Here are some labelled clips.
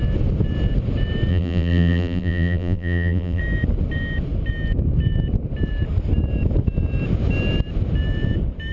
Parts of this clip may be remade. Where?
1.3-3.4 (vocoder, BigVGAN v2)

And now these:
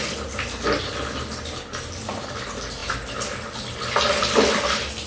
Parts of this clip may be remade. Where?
none

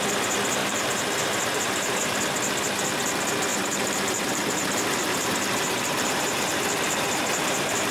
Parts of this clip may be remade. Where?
0.6-2.0 (vocoder, BigVGAN v2); 3.5-7.9

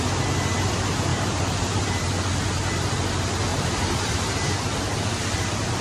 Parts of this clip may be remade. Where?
1.1-2.1 (vocoder, BigVGAN v2); 3.5-4.6

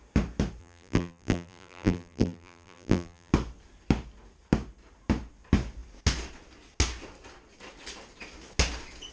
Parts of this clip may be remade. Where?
0.6-3.3 (vocoder, BigVGAN v2)

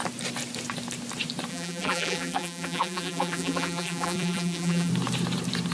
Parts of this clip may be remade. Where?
1.5-4.9 (vocoder, BigVGAN v2)

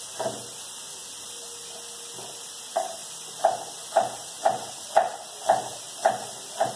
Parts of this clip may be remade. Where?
3.0-5.8 (vocoder, BigVGAN v2)

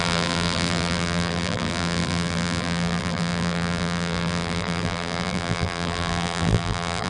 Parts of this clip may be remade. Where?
0.0-7.1 (vocoder, BigVGAN v2)